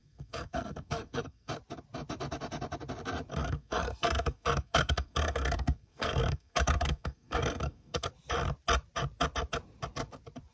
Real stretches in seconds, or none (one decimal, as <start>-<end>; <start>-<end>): 1.5-3.3; 8.1-10.5